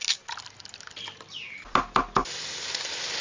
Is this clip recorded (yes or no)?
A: yes